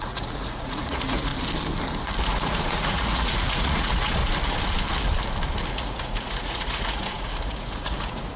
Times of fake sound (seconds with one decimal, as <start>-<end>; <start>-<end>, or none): 0.0-1.3; 2.2-4.2; 5.7-8.4